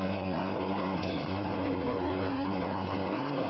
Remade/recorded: remade